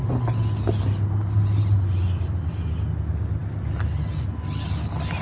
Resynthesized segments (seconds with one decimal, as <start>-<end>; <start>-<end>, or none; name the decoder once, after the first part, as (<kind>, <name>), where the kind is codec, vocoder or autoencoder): none

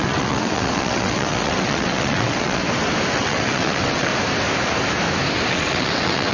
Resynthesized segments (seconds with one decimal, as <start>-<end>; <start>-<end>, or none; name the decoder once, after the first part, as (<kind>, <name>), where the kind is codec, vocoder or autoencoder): 0.0-2.6 (vocoder, WaveNeXt); 3.1-4.1; 5.5-6.3

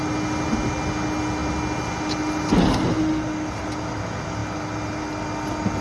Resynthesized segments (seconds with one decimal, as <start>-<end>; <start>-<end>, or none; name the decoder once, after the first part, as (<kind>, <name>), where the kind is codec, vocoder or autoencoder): none

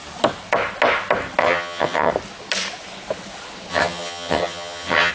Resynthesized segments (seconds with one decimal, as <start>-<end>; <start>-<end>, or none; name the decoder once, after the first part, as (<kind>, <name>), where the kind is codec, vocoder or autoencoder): 1.4-2.1 (vocoder, HiFi-GAN); 3.7-5.1